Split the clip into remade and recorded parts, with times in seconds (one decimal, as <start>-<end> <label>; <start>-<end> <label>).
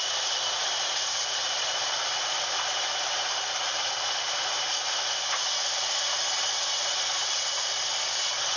0.0-8.6 recorded